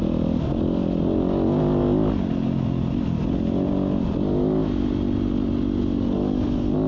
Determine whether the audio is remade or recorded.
recorded